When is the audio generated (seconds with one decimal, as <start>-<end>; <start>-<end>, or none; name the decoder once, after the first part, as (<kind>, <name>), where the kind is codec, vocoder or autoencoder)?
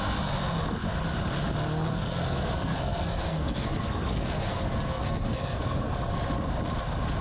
1.9-6.2 (codec, SNAC)